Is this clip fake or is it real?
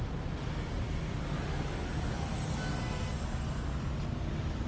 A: real